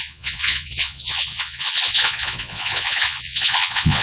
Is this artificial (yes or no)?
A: yes